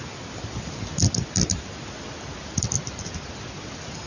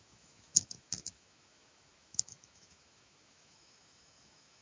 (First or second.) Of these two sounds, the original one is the first